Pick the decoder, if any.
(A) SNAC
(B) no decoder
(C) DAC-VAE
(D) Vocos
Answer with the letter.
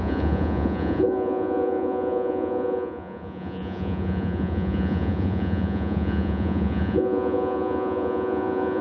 D